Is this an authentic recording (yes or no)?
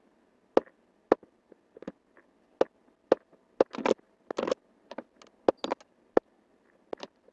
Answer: yes